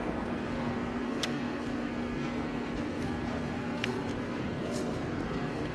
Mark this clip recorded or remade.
remade